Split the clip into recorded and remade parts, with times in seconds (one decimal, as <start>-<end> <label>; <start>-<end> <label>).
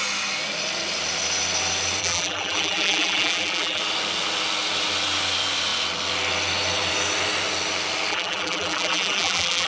0.0-2.0 recorded; 2.0-3.8 remade; 3.8-8.1 recorded; 8.1-9.7 remade